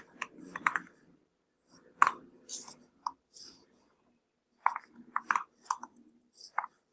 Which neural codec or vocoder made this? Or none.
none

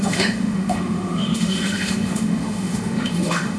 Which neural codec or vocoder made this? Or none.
autoencoder, DAC-VAE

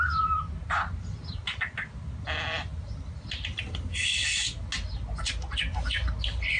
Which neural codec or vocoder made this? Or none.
none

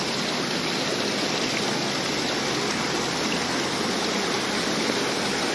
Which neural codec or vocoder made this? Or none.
none